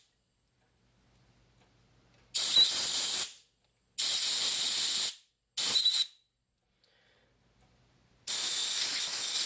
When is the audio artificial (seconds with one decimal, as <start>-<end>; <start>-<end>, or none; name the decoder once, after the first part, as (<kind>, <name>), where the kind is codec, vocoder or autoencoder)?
none